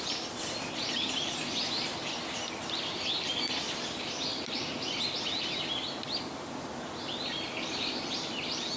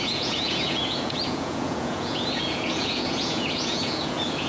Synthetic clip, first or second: second